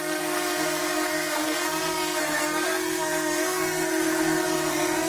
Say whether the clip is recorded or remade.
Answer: remade